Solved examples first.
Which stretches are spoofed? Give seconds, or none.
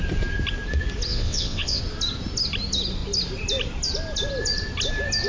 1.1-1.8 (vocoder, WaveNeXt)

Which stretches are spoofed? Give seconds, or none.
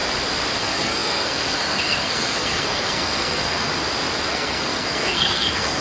0.6-3.7 (codec, SNAC); 4.3-5.8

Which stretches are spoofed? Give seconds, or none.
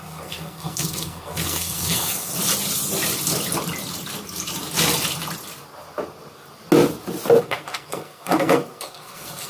0.0-2.3 (codec, SNAC); 7.4-9.5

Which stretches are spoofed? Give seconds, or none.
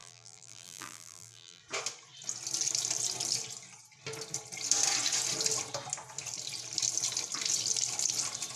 0.0-1.6 (vocoder, BigVGAN v2)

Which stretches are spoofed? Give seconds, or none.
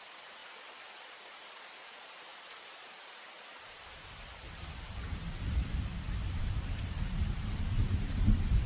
0.0-0.4 (vocoder, BigVGAN v2); 1.6-5.9; 6.4-8.7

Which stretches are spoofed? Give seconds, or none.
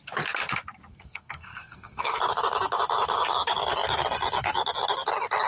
0.9-2.2 (codec, SNAC)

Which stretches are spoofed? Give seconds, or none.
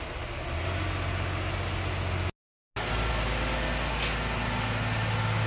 none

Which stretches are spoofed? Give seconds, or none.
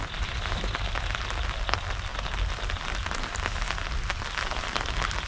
none